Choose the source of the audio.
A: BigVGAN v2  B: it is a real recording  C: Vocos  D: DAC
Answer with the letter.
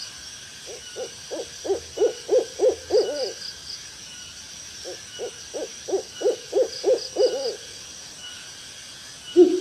B